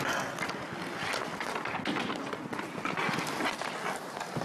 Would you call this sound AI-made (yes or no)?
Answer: no